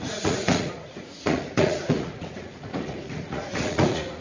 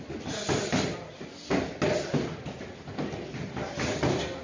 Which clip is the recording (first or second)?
second